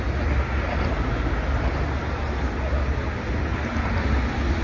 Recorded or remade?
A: recorded